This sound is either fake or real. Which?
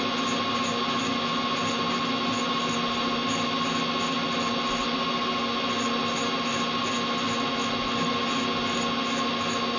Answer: real